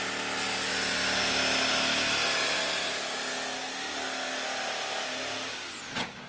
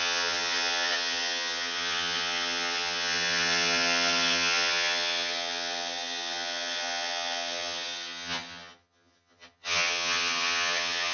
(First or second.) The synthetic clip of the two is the second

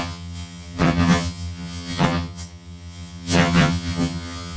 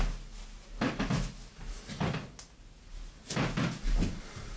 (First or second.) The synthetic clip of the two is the first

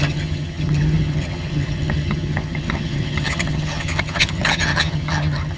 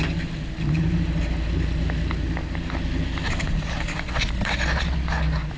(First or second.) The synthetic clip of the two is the first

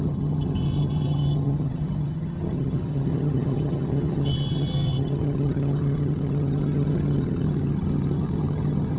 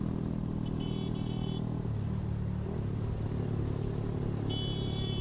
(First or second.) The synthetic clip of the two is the first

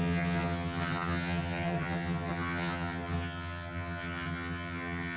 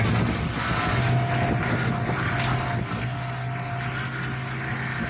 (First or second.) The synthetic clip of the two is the first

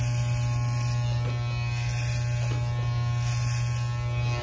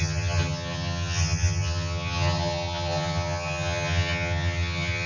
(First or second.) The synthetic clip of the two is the second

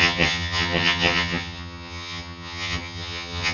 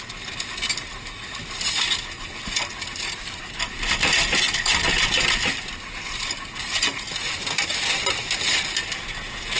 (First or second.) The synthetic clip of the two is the first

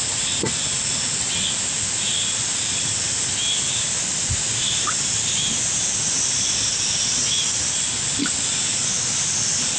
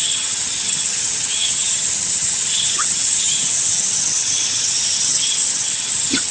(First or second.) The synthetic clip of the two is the second